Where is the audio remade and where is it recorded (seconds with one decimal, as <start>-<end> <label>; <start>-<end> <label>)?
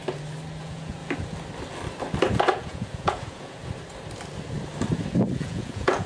0.0-0.6 recorded; 0.6-1.0 remade; 1.0-2.4 recorded; 2.4-3.6 remade; 3.6-5.3 recorded; 5.3-6.1 remade